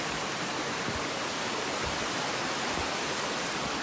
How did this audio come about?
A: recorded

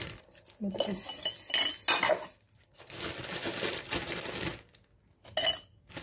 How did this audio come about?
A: recorded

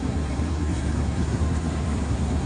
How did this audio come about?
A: remade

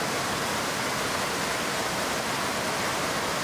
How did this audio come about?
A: recorded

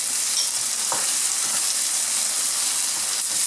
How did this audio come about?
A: recorded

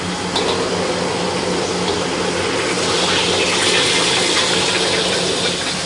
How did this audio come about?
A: recorded